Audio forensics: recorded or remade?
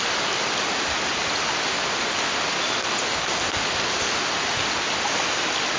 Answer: recorded